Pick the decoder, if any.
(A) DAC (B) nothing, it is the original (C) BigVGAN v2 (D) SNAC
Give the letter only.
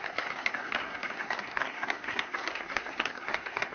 D